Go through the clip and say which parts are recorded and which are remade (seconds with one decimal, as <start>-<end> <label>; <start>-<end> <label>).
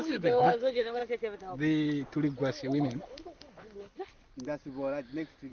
0.0-1.0 remade; 1.0-2.8 recorded; 2.8-4.1 remade; 4.1-5.5 recorded